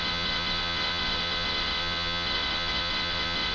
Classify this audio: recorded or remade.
remade